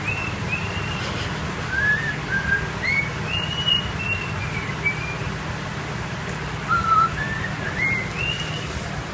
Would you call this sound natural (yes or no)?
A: yes